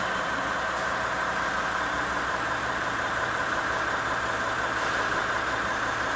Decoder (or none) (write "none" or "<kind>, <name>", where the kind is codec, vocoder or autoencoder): none